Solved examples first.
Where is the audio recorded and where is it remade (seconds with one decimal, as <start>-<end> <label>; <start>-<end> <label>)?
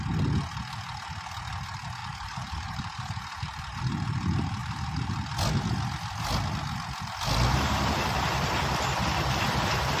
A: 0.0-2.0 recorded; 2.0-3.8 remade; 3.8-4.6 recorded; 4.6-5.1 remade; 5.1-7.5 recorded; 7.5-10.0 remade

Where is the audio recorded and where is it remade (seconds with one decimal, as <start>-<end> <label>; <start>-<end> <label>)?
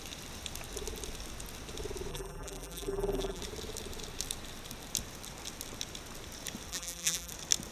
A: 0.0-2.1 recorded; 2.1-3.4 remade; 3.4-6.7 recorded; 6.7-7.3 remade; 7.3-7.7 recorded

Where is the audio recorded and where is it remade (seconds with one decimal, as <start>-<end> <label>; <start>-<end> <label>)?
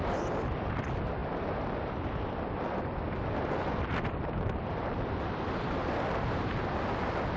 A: 0.0-7.4 recorded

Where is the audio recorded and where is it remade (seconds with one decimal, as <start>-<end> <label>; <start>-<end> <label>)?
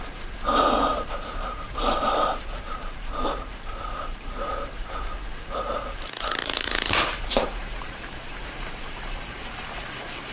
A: 0.0-0.9 recorded; 0.9-4.7 remade; 4.7-6.4 recorded; 6.4-10.3 remade